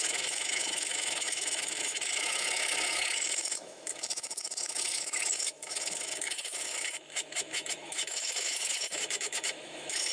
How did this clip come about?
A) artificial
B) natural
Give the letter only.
A